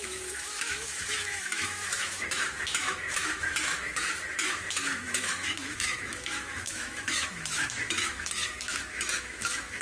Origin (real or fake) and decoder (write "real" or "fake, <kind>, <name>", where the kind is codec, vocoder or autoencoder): fake, autoencoder, DAC-VAE